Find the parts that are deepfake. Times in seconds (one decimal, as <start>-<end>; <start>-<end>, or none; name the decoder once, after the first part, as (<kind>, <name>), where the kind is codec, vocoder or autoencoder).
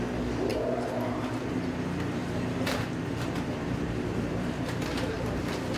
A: 2.2-5.8 (vocoder, BigVGAN v2)